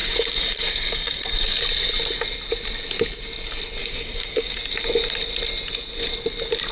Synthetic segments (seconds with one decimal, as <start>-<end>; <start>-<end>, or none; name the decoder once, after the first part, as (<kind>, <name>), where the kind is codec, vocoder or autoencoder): 0.0-1.6 (codec, DAC); 3.8-4.6